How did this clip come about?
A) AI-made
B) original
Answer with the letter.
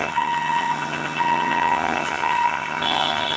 A